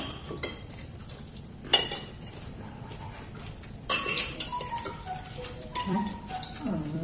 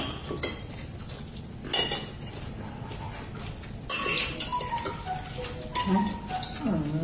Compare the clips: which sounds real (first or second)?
second